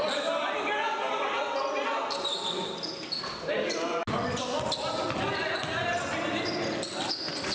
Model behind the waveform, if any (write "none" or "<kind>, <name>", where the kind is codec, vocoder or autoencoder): none